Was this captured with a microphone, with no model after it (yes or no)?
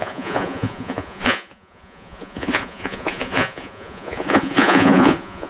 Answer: no